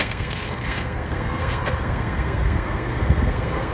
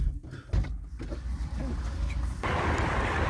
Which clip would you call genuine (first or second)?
second